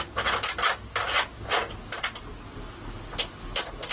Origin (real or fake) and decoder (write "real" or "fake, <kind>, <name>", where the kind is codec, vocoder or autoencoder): real